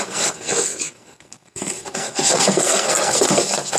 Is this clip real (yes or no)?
no